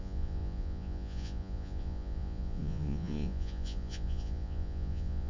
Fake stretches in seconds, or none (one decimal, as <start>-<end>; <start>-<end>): 0.0-5.3